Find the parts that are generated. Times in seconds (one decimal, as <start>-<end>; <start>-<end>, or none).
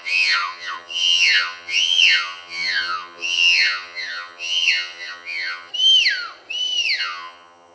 0.0-5.7; 7.0-7.7